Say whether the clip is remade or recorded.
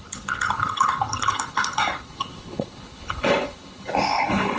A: remade